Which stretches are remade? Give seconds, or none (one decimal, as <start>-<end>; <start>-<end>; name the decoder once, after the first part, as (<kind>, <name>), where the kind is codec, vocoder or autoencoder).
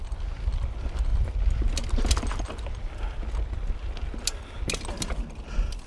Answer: none